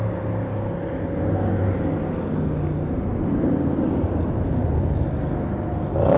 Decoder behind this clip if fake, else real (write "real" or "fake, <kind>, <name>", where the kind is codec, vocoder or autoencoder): real